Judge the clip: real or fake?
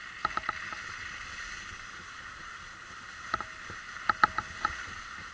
real